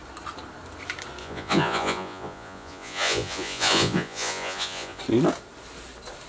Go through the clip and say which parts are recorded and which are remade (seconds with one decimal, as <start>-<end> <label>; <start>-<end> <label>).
0.0-1.2 recorded; 1.2-5.0 remade; 5.0-6.3 recorded